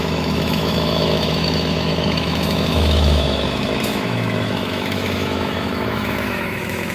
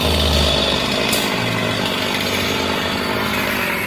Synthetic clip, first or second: first